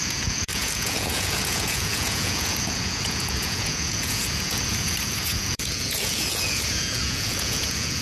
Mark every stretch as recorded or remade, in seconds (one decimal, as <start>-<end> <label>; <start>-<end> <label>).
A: 0.0-8.0 remade